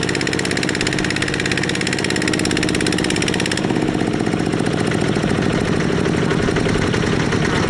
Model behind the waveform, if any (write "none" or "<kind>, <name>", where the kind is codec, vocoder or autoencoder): none